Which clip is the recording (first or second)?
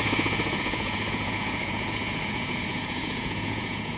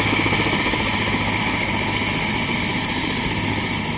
second